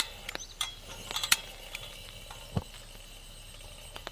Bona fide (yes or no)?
yes